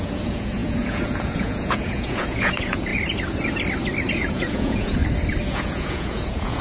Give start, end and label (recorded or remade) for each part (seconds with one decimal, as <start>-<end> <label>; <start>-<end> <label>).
0.0-2.9 remade; 2.9-4.1 recorded; 4.1-5.0 remade; 5.0-5.5 recorded; 5.5-6.6 remade